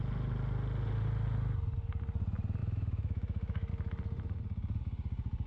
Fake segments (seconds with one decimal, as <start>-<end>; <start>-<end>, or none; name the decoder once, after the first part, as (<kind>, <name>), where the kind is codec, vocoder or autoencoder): 2.6-3.7 (autoencoder, DAC-VAE)